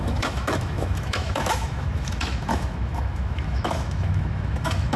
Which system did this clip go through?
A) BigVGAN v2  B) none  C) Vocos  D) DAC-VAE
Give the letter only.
D